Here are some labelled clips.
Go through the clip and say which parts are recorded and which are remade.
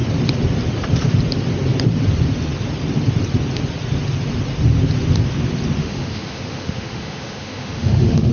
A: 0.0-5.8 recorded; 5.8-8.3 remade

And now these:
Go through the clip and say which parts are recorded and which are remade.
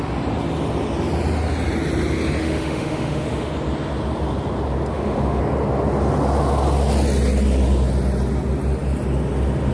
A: 0.0-2.4 recorded; 2.4-3.5 remade; 3.5-4.9 recorded; 4.9-5.4 remade; 5.4-9.7 recorded